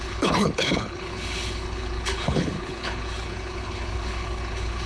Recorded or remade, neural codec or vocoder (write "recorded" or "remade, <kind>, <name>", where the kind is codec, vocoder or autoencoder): remade, codec, HILCodec